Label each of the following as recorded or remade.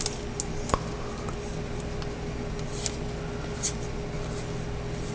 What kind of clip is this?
recorded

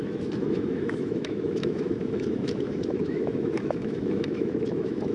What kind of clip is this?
remade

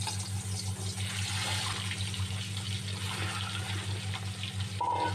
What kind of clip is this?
recorded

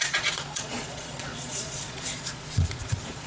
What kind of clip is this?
remade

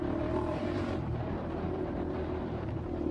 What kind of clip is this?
remade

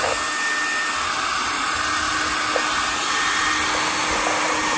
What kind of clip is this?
recorded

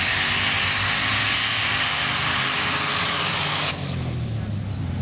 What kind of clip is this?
recorded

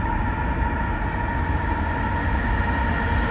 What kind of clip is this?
recorded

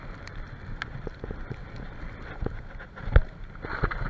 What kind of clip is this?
recorded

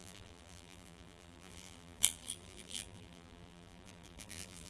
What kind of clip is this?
remade